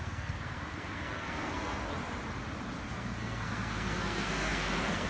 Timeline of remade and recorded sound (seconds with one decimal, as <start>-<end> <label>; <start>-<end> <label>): 0.0-1.9 remade; 1.9-2.8 recorded; 2.8-5.1 remade